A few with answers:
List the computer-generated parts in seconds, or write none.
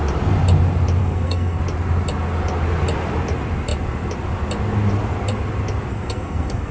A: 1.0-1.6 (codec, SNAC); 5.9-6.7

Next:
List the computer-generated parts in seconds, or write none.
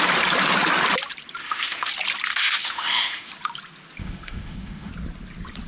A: 1.4-1.9 (autoencoder, DAC-VAE); 2.3-3.3; 4.0-4.9